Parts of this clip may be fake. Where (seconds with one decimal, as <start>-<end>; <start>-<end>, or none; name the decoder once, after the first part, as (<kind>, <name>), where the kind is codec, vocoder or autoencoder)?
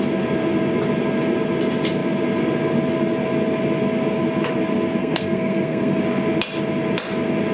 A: 5.0-6.0 (codec, SNAC)